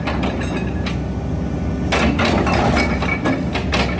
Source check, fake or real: real